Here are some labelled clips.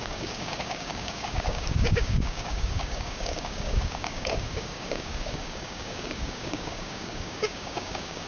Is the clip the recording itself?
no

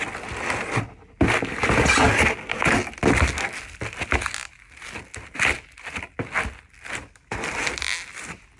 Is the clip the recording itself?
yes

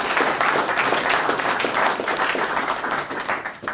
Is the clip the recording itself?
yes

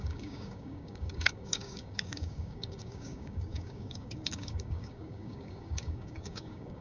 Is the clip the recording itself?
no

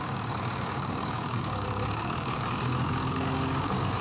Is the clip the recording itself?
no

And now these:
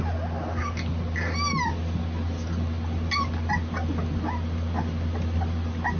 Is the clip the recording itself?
yes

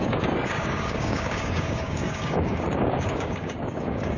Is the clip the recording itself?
no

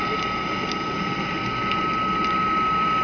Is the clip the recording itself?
yes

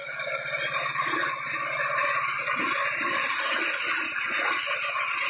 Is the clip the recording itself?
yes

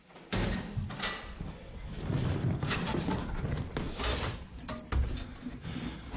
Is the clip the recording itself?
yes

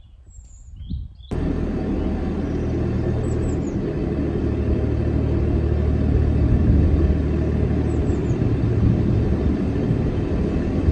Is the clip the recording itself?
yes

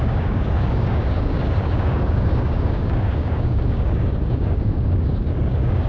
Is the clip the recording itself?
no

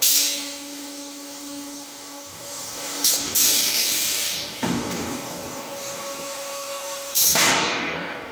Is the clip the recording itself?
no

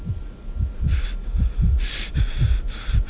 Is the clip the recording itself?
yes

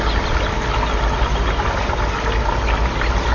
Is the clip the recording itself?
yes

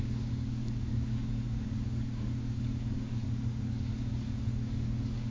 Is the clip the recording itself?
no